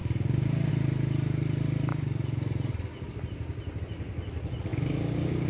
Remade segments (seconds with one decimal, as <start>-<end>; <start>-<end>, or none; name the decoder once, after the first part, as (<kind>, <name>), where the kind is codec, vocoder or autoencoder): 0.0-0.7 (codec, DAC); 4.7-5.5